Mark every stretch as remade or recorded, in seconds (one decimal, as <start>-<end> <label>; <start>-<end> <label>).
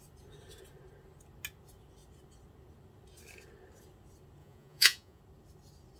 0.0-4.4 recorded; 4.4-5.2 remade; 5.2-6.0 recorded